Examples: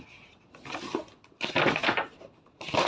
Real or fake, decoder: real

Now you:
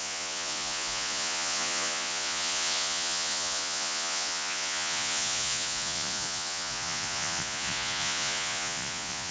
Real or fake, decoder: fake, vocoder, Vocos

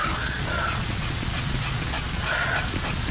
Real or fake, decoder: fake, vocoder, Vocos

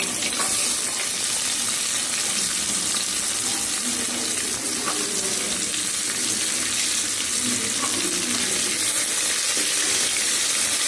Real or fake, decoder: real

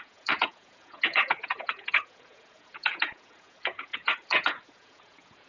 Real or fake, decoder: fake, vocoder, Vocos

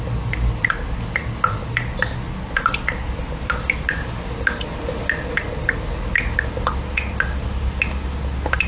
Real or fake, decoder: real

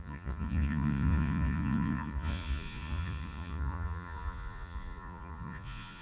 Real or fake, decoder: fake, vocoder, Vocos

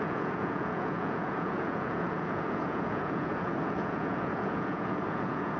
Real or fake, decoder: fake, vocoder, Vocos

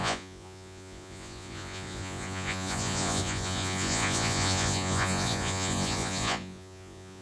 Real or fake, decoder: fake, vocoder, Vocos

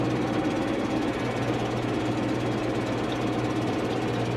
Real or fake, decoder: real